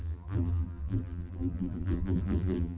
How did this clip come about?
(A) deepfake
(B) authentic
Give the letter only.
A